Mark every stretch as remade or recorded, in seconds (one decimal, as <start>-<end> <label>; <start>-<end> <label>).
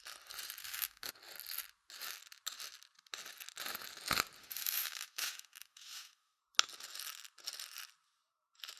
0.0-0.6 recorded; 0.6-1.1 remade; 1.1-4.4 recorded; 4.4-6.4 remade; 6.4-8.8 recorded